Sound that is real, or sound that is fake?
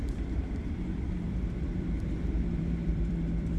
fake